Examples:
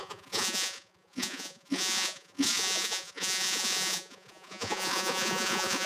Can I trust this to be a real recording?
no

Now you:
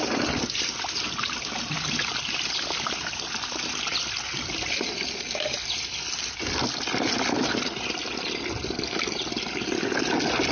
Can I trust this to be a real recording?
yes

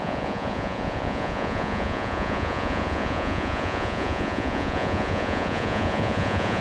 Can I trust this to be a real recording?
no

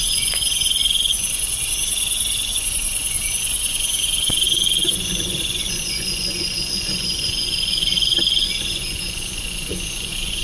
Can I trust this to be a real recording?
no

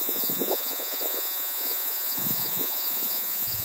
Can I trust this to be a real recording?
no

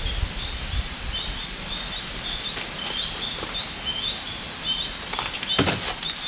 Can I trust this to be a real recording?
yes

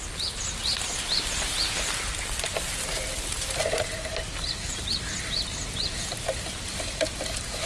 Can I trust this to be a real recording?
yes